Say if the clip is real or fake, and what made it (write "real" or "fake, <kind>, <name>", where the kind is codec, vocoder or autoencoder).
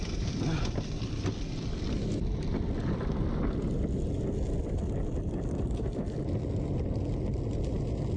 real